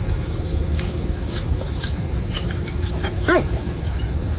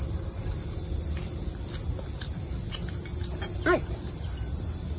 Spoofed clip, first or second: first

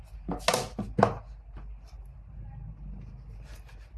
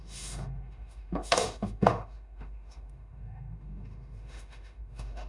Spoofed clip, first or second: second